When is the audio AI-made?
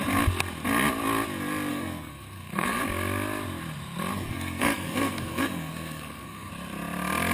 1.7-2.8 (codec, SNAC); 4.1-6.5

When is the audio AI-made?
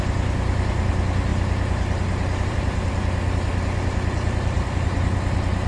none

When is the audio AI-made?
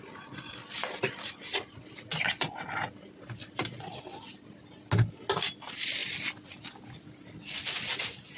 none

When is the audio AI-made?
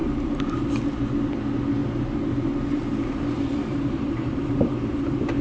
0.0-0.7 (vocoder, BigVGAN v2); 1.8-5.0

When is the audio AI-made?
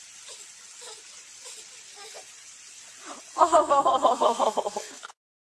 3.4-5.0 (codec, SNAC)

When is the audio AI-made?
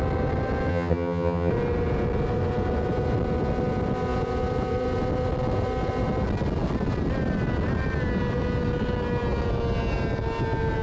0.7-1.5 (vocoder, HiFi-GAN)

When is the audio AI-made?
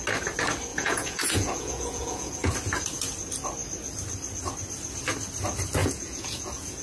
0.7-2.5 (vocoder, Vocos); 5.8-6.8